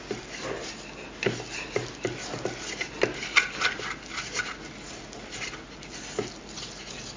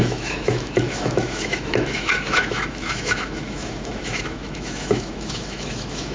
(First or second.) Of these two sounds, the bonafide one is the first